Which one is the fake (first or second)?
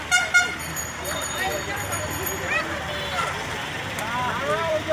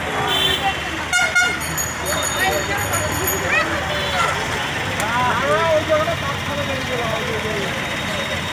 first